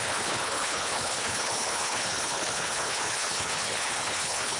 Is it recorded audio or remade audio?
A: remade